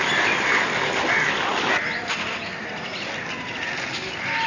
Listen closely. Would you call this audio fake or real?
real